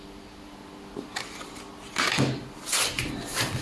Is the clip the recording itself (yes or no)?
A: yes